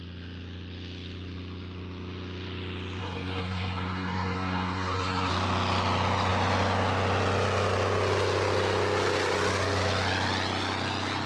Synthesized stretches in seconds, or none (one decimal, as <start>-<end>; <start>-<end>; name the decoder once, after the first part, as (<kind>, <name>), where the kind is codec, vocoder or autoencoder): 3.0-5.3 (codec, SNAC)